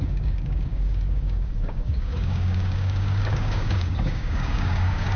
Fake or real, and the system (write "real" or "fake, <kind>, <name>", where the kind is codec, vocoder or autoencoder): fake, codec, DAC